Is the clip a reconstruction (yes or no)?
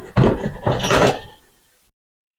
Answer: yes